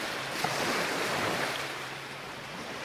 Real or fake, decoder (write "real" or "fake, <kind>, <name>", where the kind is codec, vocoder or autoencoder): fake, vocoder, BigVGAN v2